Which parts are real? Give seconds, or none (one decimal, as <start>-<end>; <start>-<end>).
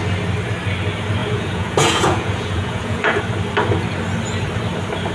0.0-1.2; 3.2-5.1